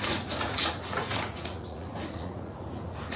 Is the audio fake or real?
fake